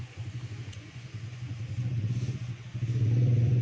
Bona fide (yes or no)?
no